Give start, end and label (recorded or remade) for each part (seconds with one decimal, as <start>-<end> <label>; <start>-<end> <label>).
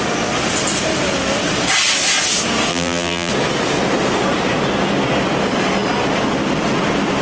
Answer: 0.0-2.7 recorded; 2.7-3.3 remade; 3.3-7.2 recorded